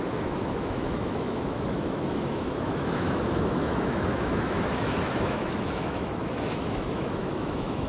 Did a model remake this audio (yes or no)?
yes